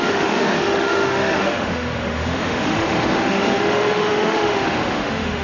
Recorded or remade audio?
remade